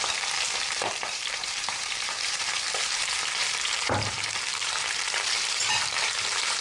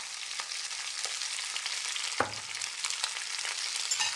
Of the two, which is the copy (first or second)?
first